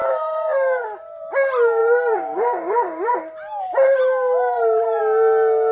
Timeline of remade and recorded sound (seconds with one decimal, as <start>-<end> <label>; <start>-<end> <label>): 0.0-0.8 remade; 0.8-1.8 recorded; 1.8-5.0 remade; 5.0-5.7 recorded